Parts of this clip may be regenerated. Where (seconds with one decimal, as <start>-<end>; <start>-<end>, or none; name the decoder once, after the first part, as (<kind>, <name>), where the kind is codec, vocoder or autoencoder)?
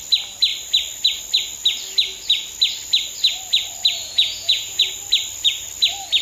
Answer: 4.0-4.8 (vocoder, Vocos)